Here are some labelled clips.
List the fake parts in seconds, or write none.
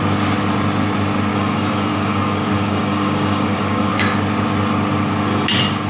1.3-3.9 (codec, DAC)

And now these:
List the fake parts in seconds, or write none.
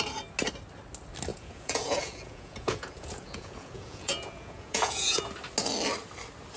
1.3-5.3 (vocoder, Vocos)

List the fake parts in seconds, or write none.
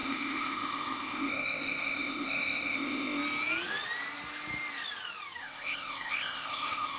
0.0-3.2 (codec, ZipCodec); 5.4-7.0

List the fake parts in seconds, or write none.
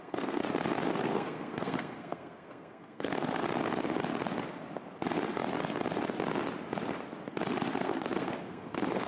0.0-0.4 (codec, SNAC); 0.9-3.4; 7.7-9.1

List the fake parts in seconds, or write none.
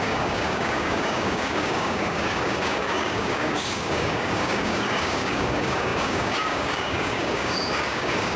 0.0-8.4 (codec, DAC)